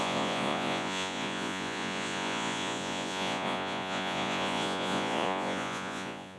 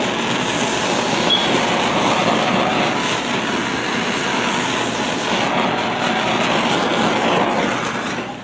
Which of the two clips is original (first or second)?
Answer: second